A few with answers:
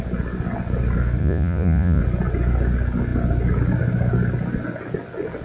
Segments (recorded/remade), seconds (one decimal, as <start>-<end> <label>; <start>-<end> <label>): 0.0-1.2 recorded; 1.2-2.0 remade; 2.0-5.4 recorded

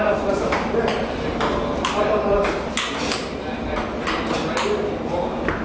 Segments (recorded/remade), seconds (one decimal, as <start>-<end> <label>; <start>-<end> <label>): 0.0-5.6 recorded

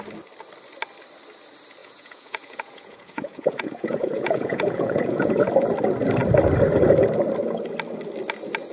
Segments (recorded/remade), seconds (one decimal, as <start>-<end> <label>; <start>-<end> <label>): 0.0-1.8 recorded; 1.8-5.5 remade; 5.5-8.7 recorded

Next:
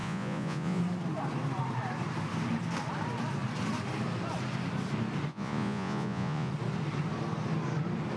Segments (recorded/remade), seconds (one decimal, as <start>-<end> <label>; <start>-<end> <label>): 0.0-0.8 remade; 0.8-5.3 recorded; 5.3-6.5 remade; 6.5-8.2 recorded

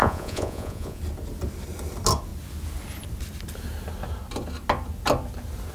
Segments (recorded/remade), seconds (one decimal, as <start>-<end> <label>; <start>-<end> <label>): 0.0-1.0 remade; 1.0-5.7 recorded

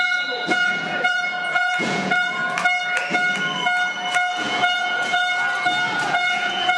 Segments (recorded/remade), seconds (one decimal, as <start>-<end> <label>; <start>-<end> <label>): 0.0-2.4 remade; 2.4-4.3 recorded; 4.3-5.2 remade; 5.2-6.1 recorded; 6.1-6.8 remade

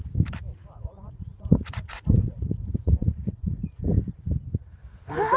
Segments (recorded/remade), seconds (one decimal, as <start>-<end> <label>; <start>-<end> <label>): 0.0-0.6 recorded; 0.6-3.8 remade; 3.8-5.4 recorded

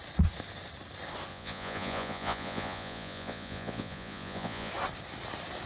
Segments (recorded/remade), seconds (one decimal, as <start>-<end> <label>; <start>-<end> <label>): 0.0-1.3 recorded; 1.3-4.7 remade; 4.7-5.7 recorded